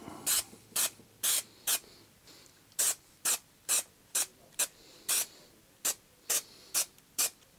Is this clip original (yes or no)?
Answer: no